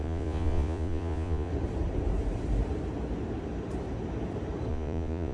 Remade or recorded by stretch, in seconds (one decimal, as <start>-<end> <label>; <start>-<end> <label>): 0.0-1.5 remade; 1.5-4.7 recorded; 4.7-5.3 remade